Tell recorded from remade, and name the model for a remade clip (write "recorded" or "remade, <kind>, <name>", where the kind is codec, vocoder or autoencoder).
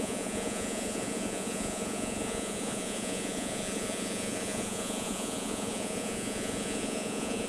remade, vocoder, Vocos